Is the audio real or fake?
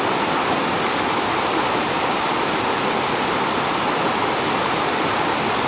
real